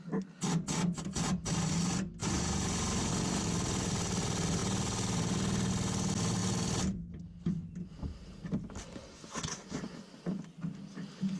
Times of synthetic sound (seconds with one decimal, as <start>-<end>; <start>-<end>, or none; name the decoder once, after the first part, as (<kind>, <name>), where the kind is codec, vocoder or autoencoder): 2.2-3.1 (vocoder, BigVGAN v2)